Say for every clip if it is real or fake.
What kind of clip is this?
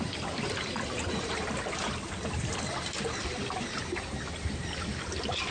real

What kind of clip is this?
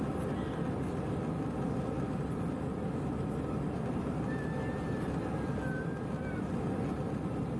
real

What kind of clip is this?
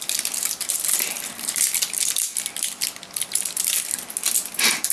real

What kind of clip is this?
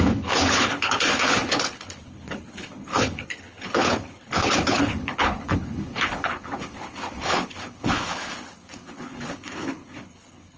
fake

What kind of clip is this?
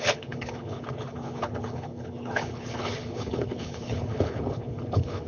fake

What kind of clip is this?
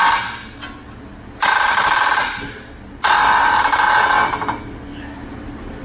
real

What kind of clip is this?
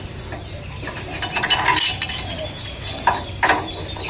real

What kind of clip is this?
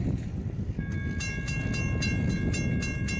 real